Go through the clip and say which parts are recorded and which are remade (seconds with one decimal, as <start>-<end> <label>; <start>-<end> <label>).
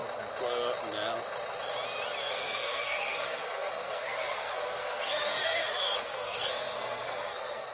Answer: 0.0-2.2 recorded; 2.2-7.7 remade